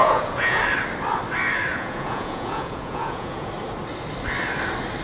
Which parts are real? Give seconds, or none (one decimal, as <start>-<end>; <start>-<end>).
0.6-1.7; 3.5-5.0